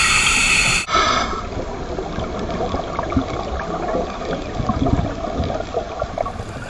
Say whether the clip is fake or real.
real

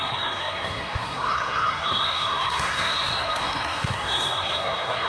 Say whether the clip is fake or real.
fake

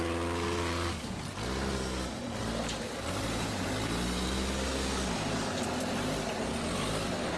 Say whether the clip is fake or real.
real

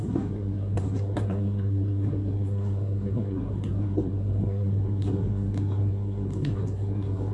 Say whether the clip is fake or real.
fake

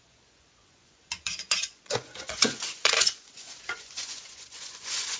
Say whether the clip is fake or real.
fake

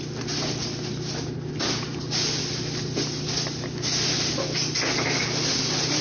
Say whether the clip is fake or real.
real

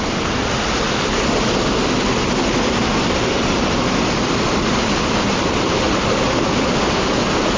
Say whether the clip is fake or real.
real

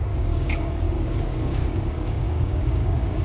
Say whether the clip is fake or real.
fake